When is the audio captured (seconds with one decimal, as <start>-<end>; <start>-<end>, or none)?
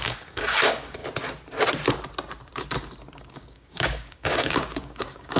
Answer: 1.0-3.2